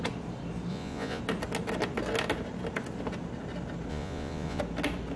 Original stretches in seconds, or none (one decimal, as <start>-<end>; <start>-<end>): 0.0-0.7; 1.2-3.9; 4.6-5.2